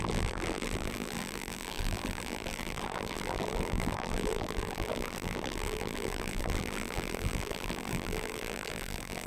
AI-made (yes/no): yes